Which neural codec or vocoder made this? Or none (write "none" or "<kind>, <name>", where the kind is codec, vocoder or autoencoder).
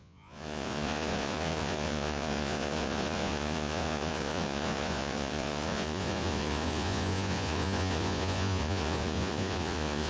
vocoder, Vocos